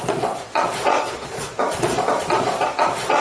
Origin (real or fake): fake